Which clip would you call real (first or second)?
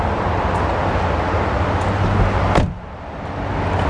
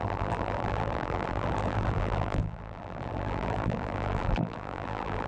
first